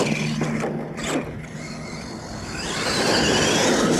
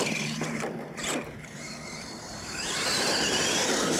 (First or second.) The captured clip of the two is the first